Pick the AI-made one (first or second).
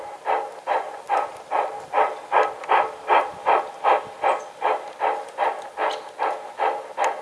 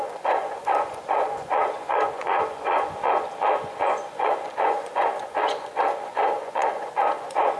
second